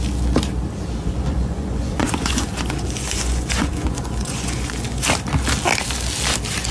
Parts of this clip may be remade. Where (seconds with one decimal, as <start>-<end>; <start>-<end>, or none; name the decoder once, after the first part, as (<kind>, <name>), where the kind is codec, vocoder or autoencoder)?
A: 1.0-5.0 (vocoder, Vocos)